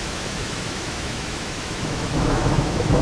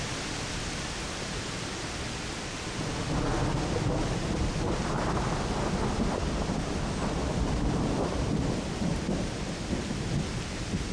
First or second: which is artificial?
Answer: first